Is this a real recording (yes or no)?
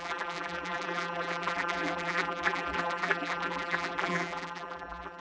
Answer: no